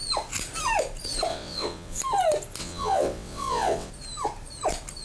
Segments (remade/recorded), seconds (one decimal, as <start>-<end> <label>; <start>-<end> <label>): 0.0-1.3 recorded; 1.3-2.0 remade; 2.0-2.6 recorded; 2.6-3.9 remade; 3.9-5.0 recorded